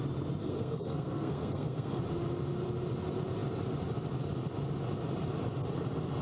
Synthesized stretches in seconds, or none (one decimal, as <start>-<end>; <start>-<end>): 0.4-2.0